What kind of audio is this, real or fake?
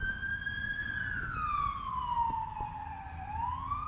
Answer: real